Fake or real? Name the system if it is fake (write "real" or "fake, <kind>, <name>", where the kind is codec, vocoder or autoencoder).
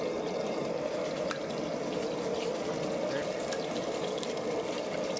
real